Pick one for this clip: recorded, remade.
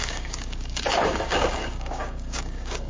remade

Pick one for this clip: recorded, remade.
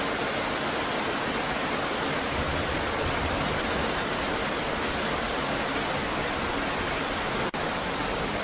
recorded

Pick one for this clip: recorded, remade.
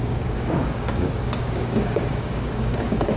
remade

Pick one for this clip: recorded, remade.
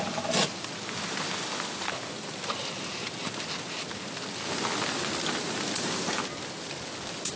recorded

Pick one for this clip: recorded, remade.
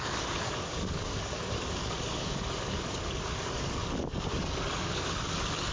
remade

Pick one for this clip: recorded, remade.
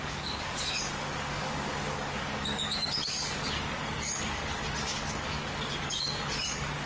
remade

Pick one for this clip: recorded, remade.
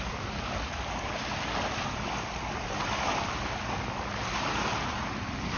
recorded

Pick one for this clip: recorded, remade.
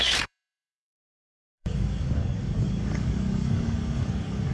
remade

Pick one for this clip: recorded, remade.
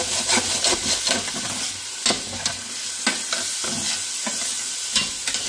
recorded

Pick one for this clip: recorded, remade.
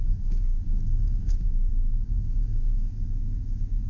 remade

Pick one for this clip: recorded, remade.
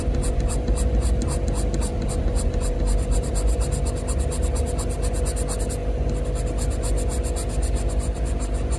recorded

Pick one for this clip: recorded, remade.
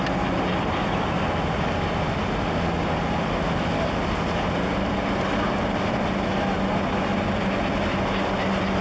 recorded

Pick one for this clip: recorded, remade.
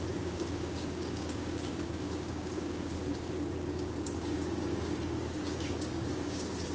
remade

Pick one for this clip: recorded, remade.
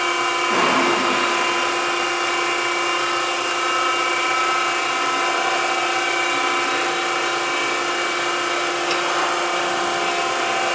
recorded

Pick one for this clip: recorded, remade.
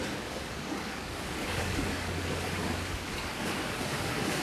remade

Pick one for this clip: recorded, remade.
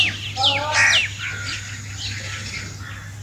recorded